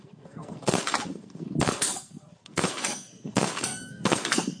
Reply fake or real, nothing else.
fake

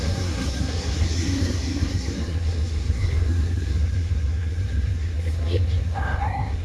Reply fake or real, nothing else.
fake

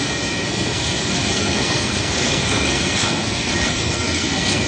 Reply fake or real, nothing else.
fake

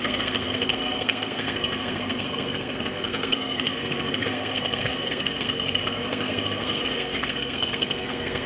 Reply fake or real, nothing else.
fake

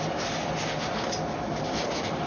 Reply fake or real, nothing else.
real